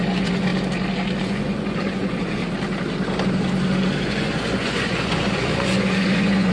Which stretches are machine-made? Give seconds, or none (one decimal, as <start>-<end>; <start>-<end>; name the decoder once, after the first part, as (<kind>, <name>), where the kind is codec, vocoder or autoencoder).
0.0-0.5 (vocoder, Vocos); 1.2-2.4; 4.0-6.5